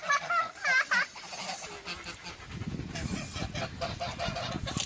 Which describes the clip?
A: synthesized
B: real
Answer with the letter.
B